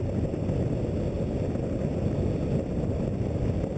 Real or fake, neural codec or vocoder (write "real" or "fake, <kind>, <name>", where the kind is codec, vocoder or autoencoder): real